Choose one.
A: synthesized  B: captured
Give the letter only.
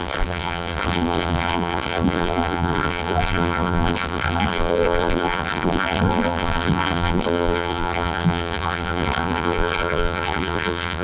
A